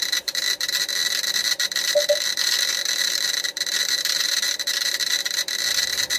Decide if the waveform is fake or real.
fake